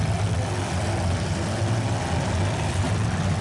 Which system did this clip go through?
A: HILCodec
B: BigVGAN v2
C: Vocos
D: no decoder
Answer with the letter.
D